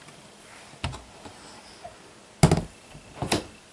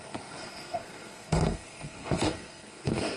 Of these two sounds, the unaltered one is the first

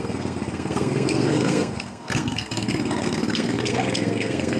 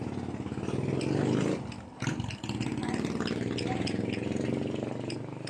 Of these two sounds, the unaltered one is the second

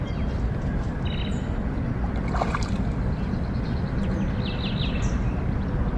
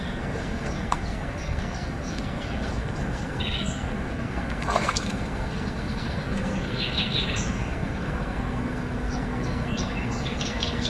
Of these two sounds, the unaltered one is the first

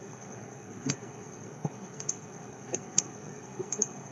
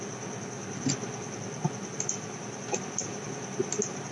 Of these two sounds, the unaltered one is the second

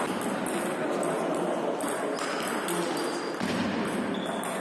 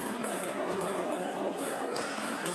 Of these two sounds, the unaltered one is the first